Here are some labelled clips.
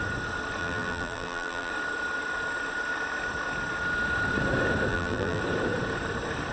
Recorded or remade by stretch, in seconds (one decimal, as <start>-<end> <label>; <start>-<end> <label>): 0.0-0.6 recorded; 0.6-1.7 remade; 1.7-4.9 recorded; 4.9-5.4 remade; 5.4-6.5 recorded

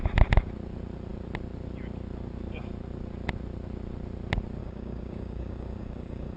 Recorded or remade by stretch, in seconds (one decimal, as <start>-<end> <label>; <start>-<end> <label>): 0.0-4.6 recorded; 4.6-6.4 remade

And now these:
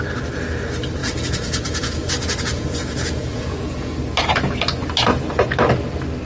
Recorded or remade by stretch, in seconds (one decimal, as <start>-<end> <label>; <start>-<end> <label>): 0.0-1.0 recorded; 1.0-4.0 remade; 4.0-6.2 recorded

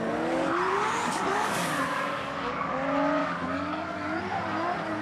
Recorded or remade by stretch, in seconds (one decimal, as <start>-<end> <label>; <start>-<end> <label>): 0.0-0.7 recorded; 0.7-2.7 remade; 2.7-3.2 recorded; 3.2-4.2 remade; 4.2-5.0 recorded